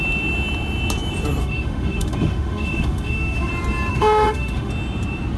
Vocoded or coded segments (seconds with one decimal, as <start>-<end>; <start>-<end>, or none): 1.4-3.5; 3.9-4.7